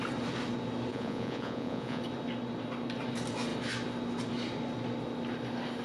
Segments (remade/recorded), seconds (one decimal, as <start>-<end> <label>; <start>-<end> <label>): 0.0-0.9 recorded; 0.9-2.0 remade; 2.0-5.8 recorded